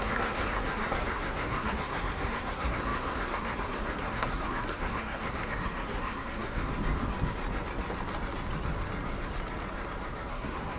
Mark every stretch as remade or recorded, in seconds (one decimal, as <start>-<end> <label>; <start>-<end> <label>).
0.0-6.7 remade; 6.7-10.3 recorded; 10.3-10.8 remade